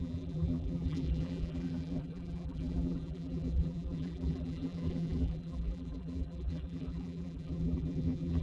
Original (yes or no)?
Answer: no